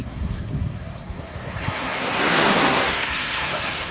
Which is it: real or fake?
fake